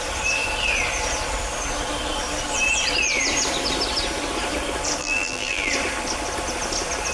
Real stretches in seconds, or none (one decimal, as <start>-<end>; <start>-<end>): 0.0-5.0; 5.7-7.1